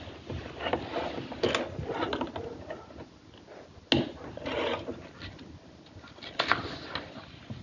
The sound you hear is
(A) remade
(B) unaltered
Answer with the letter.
B